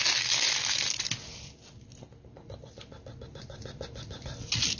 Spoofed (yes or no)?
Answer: no